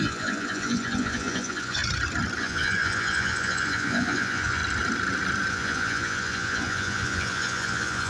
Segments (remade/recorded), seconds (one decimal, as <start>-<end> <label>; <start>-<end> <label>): 0.0-1.8 remade; 1.8-2.4 recorded; 2.4-4.6 remade; 4.6-5.5 recorded; 5.5-8.1 remade